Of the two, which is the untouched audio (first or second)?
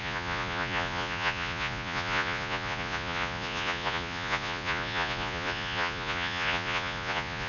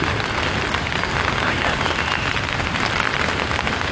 second